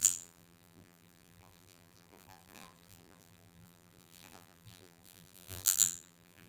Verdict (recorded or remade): remade